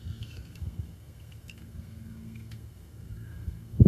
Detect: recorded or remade remade